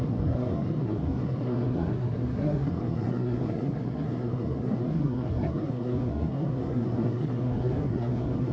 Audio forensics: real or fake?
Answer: fake